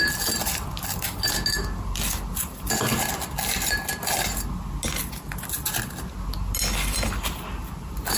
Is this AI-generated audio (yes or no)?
no